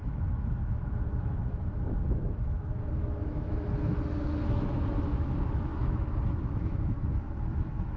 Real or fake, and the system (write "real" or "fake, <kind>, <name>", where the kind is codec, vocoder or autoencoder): fake, autoencoder, DAC-VAE